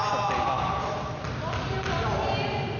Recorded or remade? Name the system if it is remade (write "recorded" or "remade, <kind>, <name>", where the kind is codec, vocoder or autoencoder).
recorded